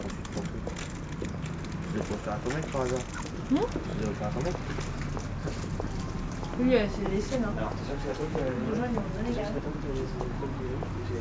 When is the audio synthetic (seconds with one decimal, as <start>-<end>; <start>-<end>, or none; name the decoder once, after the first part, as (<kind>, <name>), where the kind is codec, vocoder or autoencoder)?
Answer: none

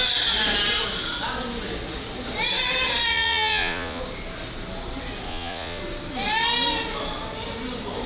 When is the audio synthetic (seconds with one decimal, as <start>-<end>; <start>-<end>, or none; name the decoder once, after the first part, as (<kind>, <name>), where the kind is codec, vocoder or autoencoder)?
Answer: 3.1-4.0 (vocoder, Vocos); 5.3-5.8

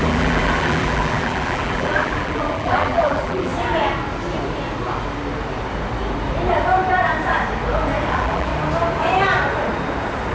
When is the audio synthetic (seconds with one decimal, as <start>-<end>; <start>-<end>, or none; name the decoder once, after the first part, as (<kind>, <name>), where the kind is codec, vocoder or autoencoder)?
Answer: 0.0-3.5 (vocoder, BigVGAN v2); 8.1-8.5

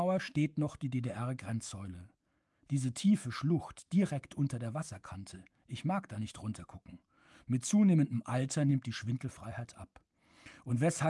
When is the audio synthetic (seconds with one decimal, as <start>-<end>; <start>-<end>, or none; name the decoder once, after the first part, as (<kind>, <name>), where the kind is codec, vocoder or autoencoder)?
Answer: 0.0-8.7 (autoencoder, DAC-VAE); 10.7-11.1

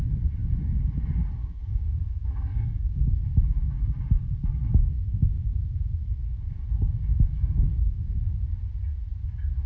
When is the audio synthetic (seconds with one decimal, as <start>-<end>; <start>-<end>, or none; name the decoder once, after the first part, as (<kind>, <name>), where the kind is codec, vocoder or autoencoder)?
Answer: 1.4-3.2 (codec, SNAC); 4.8-6.5; 7.7-8.2

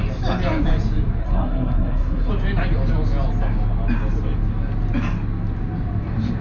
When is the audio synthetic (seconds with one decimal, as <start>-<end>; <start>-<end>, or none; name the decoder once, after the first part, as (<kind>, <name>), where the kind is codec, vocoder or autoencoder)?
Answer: 1.2-2.3 (codec, SNAC)